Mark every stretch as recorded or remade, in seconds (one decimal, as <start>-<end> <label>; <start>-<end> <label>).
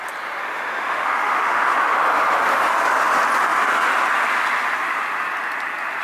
0.0-0.4 recorded; 0.4-1.9 remade; 1.9-6.0 recorded